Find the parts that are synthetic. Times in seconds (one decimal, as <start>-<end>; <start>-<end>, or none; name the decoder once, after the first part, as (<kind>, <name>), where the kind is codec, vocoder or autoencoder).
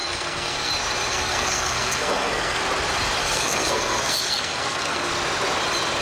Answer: 0.0-0.7 (codec, SNAC); 1.1-2.6; 3.2-5.1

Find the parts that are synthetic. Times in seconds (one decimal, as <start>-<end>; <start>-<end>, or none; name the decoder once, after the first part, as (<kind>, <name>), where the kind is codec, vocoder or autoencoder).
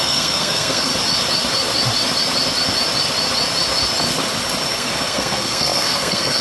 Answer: 0.0-0.9 (codec, SNAC); 4.7-6.4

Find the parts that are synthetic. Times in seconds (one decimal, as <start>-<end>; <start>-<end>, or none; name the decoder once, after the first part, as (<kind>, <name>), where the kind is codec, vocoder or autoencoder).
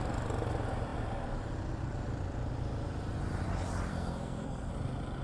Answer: 3.9-4.7 (codec, SNAC)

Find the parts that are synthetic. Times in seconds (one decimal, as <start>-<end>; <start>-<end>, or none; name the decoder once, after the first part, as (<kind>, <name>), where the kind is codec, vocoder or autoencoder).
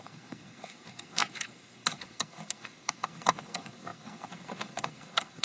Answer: 0.0-5.4 (codec, SNAC)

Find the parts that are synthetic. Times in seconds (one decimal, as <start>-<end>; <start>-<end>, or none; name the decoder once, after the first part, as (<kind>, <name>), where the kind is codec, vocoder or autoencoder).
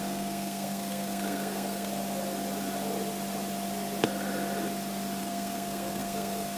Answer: 0.0-1.9 (codec, SNAC); 5.2-6.6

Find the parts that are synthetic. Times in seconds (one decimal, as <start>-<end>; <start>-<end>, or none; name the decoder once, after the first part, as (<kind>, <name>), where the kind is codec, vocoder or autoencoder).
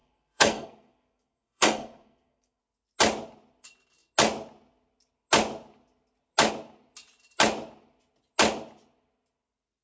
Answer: 0.0-2.6 (codec, SNAC)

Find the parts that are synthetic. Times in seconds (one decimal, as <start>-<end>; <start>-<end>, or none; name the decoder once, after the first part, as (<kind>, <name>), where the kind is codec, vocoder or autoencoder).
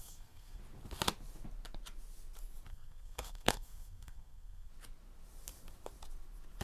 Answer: 0.0-0.6 (codec, SNAC); 2.7-4.7